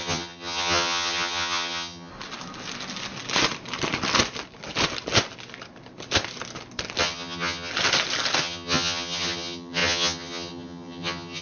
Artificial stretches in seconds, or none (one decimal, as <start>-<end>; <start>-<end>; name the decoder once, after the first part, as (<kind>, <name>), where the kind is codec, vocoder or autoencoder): 0.0-2.1 (vocoder, HiFi-GAN); 7.0-7.7; 8.4-11.4